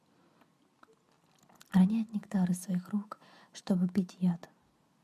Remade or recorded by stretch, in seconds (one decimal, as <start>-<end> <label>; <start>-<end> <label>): 0.0-2.2 recorded; 2.2-4.1 remade; 4.1-5.0 recorded